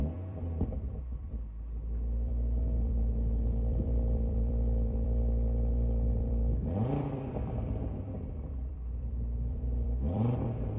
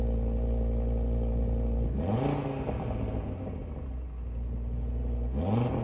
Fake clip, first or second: first